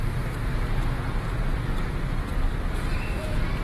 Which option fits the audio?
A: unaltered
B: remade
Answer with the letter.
A